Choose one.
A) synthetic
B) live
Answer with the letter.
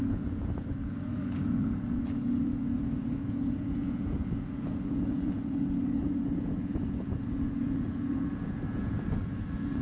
A